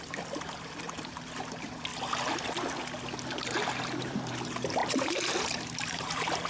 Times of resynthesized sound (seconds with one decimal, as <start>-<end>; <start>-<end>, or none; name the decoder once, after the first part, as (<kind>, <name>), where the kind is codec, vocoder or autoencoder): 0.0-1.9 (vocoder, BigVGAN v2); 4.0-6.5